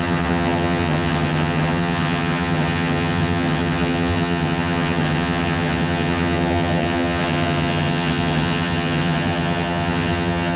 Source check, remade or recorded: remade